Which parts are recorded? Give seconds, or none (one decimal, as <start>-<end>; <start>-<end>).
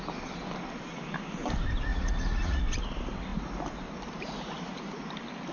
0.0-1.9; 2.6-5.5